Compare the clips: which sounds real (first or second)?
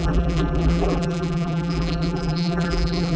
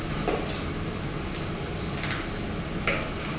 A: second